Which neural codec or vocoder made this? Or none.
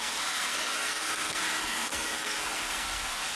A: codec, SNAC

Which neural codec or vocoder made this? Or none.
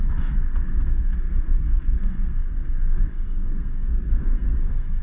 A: codec, SNAC